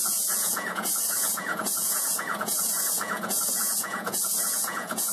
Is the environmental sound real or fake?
fake